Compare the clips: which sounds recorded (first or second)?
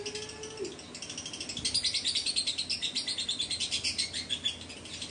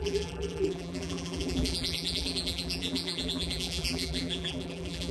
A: first